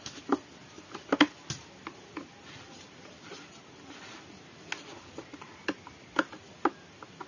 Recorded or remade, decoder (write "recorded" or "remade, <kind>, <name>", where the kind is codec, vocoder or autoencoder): recorded